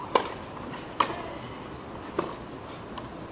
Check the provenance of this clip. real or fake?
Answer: real